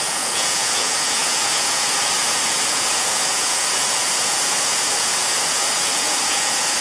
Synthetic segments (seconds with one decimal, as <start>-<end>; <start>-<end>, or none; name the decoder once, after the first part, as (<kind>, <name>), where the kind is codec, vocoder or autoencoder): 0.0-6.8 (vocoder, Vocos)